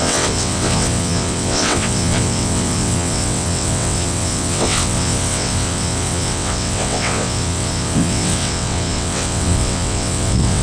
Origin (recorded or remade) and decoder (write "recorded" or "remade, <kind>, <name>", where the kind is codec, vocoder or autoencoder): remade, vocoder, WaveNeXt